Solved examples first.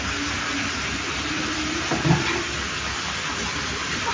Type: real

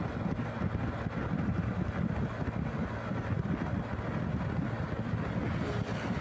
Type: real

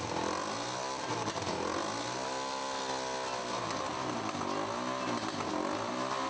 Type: real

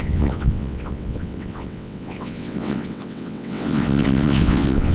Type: fake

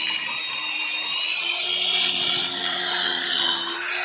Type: real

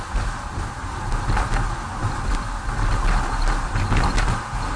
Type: real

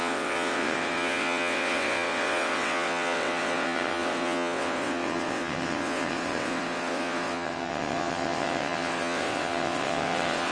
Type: fake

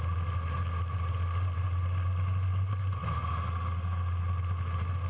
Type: real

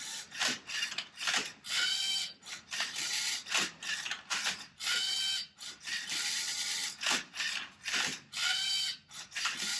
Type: real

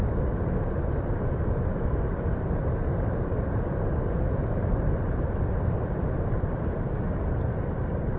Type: real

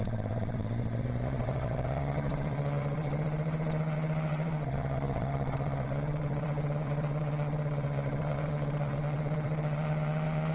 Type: fake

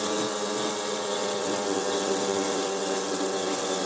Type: fake